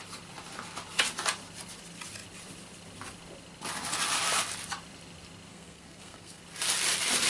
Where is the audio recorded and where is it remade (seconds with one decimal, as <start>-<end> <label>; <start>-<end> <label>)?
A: 0.0-5.5 recorded; 5.5-6.4 remade; 6.4-7.3 recorded